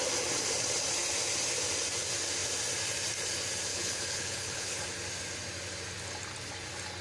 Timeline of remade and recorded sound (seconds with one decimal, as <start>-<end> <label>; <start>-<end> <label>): 0.0-3.7 recorded; 3.7-4.8 remade; 4.8-7.0 recorded